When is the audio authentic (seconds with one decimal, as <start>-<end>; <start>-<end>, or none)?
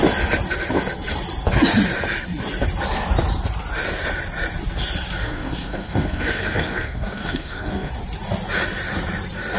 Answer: 0.0-5.2; 7.9-9.6